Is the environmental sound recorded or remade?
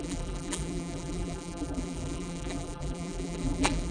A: remade